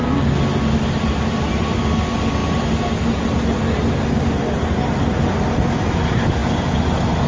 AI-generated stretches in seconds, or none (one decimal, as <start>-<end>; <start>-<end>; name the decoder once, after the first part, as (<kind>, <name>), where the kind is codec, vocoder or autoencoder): none

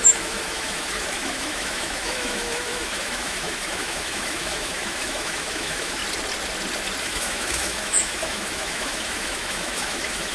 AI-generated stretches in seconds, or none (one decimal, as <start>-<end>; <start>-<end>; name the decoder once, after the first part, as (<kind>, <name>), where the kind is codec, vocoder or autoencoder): 0.0-6.0 (autoencoder, DAC-VAE); 7.0-10.3

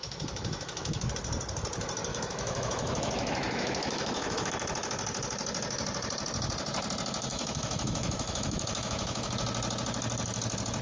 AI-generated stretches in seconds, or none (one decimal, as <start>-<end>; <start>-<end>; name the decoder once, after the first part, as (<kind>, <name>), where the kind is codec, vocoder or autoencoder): 0.0-1.1 (autoencoder, DAC-VAE); 2.1-4.5; 7.3-9.3

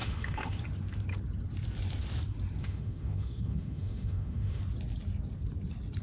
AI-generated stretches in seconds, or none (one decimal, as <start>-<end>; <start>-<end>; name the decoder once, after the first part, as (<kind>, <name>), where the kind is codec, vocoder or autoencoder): 0.0-0.6 (autoencoder, DAC-VAE); 2.6-4.6

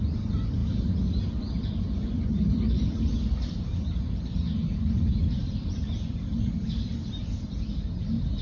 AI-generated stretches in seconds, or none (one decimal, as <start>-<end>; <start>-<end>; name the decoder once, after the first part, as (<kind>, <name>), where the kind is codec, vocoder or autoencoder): none

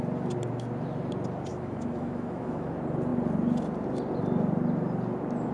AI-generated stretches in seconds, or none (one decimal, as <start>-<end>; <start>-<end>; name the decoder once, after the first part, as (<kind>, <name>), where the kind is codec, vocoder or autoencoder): 1.5-2.7 (autoencoder, DAC-VAE)